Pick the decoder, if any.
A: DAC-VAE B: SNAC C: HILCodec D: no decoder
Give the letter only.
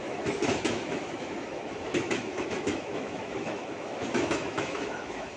A